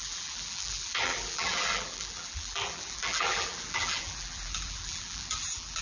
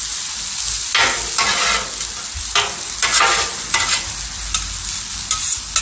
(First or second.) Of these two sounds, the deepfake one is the first